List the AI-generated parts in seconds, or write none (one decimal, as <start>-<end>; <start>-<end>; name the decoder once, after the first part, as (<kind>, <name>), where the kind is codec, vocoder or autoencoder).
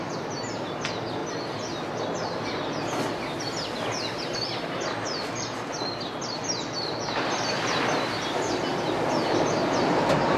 none